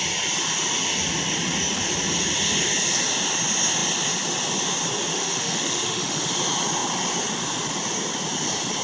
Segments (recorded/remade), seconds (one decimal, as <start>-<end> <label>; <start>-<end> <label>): 0.0-5.1 recorded; 5.1-6.3 remade; 6.3-8.8 recorded